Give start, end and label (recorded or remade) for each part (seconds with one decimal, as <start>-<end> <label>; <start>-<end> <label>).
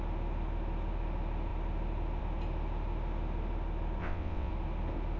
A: 0.0-4.0 recorded; 4.0-4.5 remade; 4.5-5.2 recorded